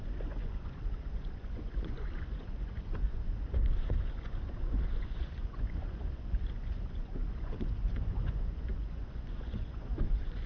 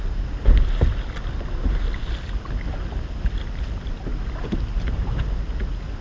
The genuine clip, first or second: second